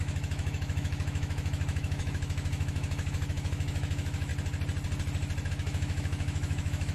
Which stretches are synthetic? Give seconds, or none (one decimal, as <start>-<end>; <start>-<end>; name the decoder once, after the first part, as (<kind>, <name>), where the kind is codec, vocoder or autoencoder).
0.0-4.3 (autoencoder, DAC-VAE); 5.5-6.9